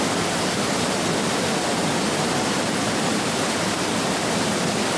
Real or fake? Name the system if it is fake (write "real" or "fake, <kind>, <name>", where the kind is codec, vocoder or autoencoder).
real